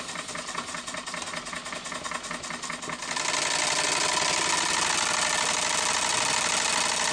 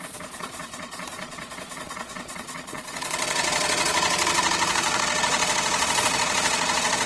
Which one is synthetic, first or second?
second